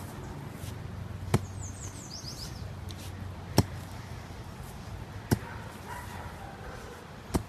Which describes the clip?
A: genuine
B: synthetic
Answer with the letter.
A